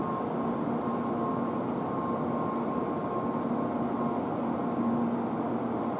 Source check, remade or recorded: recorded